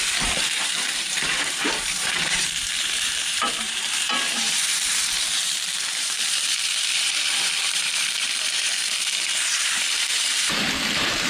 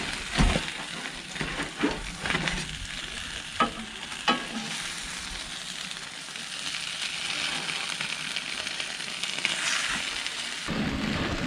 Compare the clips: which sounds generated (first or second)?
first